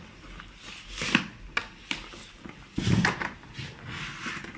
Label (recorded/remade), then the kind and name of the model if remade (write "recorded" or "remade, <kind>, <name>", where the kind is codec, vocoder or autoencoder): recorded